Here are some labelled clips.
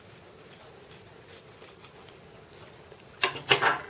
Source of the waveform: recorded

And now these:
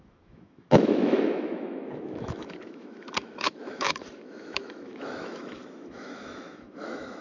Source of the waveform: remade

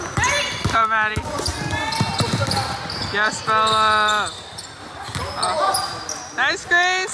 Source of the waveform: recorded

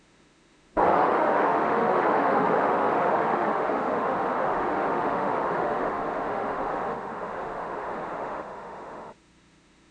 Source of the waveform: remade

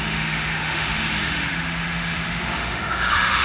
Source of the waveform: remade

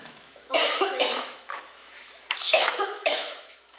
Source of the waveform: remade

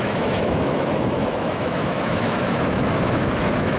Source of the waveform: remade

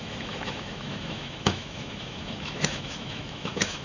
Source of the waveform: remade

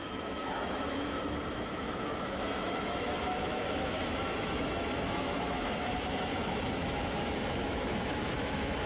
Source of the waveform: remade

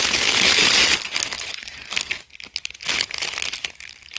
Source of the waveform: recorded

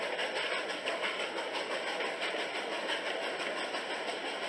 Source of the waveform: recorded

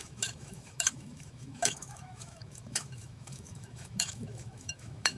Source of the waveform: remade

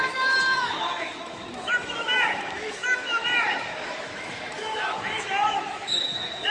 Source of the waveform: remade